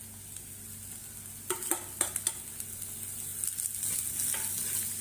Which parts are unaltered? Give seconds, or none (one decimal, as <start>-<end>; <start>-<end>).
0.0-5.0